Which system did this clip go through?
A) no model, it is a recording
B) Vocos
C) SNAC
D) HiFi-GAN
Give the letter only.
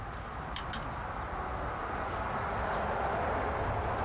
A